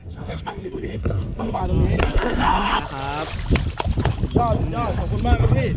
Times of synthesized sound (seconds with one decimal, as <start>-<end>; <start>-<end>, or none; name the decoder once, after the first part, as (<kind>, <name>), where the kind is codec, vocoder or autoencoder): 0.0-1.6 (codec, SNAC); 2.0-2.8